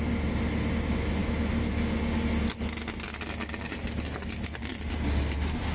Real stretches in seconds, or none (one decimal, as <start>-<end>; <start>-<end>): 0.0-5.7